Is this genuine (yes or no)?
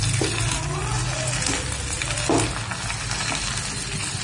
yes